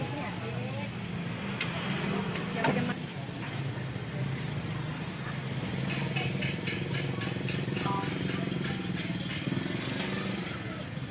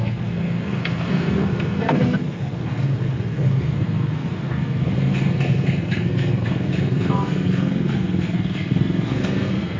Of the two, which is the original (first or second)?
first